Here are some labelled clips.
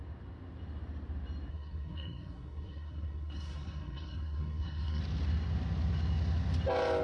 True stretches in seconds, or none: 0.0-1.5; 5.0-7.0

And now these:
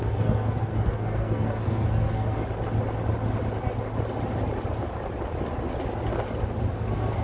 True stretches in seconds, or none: 2.4-6.7

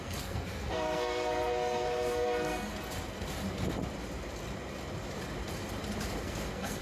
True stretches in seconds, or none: 2.7-6.2